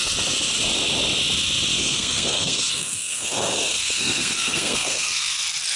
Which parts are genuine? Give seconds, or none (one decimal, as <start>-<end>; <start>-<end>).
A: 0.0-1.8; 5.3-5.8